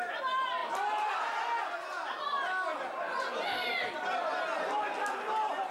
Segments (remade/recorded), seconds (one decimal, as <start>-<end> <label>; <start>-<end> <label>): 0.0-5.7 recorded